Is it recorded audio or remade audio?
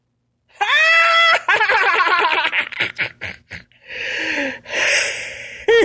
recorded